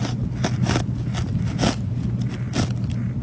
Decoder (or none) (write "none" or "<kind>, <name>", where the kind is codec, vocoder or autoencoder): none